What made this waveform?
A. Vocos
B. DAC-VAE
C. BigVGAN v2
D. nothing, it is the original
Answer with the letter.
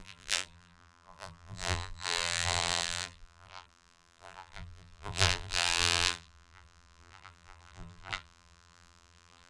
C